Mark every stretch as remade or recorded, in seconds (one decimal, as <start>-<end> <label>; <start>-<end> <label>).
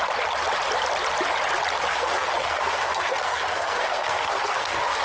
0.0-1.9 recorded; 1.9-5.0 remade